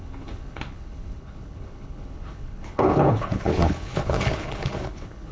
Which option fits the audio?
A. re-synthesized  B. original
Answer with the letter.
A